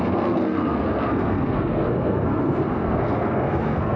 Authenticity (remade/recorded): remade